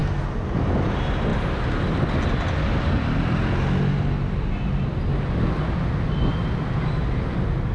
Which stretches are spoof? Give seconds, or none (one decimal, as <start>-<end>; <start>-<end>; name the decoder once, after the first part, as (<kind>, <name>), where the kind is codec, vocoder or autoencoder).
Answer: none